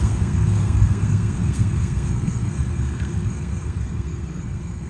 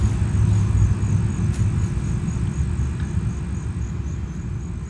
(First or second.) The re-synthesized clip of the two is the first